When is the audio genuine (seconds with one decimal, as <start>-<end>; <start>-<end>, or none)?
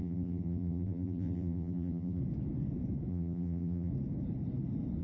2.2-3.1; 3.9-5.0